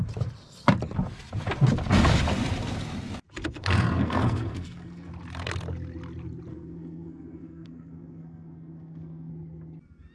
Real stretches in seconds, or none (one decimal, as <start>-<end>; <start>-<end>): 0.0-3.6; 5.1-6.5; 9.3-10.1